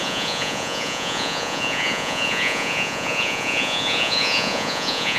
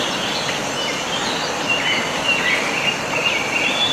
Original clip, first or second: second